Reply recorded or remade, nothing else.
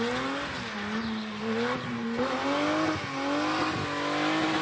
recorded